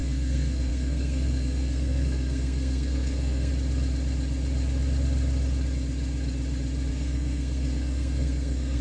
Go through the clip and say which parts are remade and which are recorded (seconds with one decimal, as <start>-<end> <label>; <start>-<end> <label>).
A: 0.0-3.5 remade; 3.5-6.9 recorded; 6.9-8.8 remade